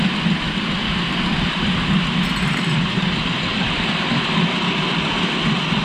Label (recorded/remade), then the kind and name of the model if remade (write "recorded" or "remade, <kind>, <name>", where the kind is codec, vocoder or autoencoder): recorded